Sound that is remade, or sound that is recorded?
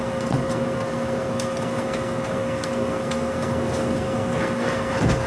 remade